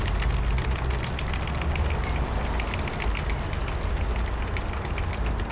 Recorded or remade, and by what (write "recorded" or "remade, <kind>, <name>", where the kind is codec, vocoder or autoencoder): recorded